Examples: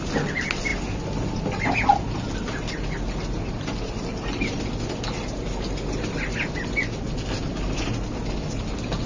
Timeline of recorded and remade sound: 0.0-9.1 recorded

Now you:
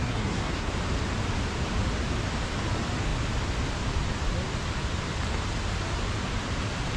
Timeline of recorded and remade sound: 0.0-0.7 remade; 0.7-7.0 recorded

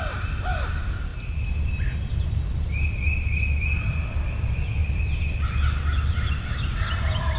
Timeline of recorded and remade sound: 0.0-7.4 recorded

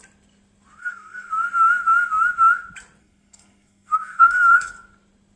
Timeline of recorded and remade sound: 0.0-0.8 recorded; 0.8-1.3 remade; 1.3-3.0 recorded; 3.0-4.7 remade; 4.7-5.4 recorded

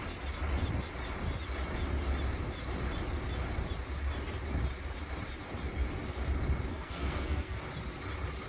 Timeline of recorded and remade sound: 0.0-6.7 recorded; 6.7-7.6 remade; 7.6-8.5 recorded

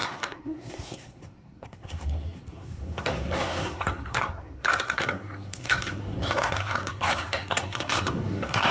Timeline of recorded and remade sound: 0.0-8.7 remade

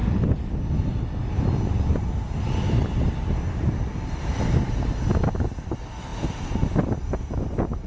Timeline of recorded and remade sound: 0.0-7.9 recorded

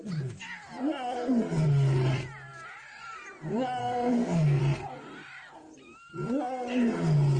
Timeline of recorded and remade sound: 0.0-3.8 recorded; 3.8-4.6 remade; 4.6-7.4 recorded